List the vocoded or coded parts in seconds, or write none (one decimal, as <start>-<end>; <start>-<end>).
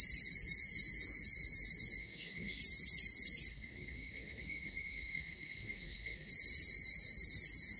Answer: 2.0-2.6; 3.5-6.3